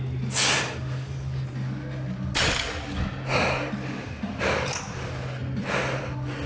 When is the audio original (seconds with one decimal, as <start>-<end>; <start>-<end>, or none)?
0.0-6.5